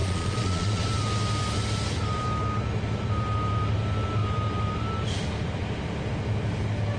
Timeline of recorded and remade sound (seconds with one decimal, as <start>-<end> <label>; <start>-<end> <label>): 0.0-0.9 remade; 0.9-7.0 recorded